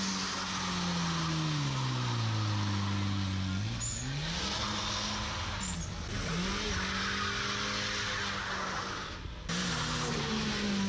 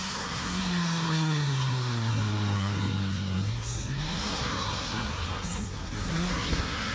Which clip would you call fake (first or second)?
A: second